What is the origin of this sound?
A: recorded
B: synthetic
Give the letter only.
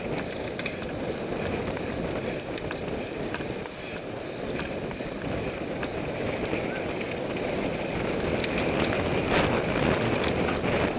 A